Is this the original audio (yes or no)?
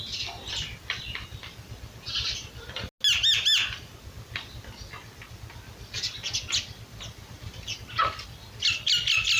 yes